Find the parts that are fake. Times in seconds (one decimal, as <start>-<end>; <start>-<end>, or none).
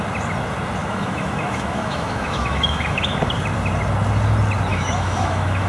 0.8-3.2; 4.7-5.7